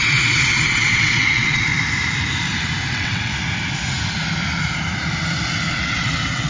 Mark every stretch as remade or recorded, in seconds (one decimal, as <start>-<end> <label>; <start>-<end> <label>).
0.0-1.7 remade; 1.7-2.9 recorded; 2.9-3.3 remade; 3.3-5.7 recorded; 5.7-6.5 remade